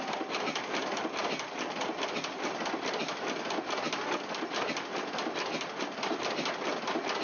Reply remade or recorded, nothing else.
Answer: recorded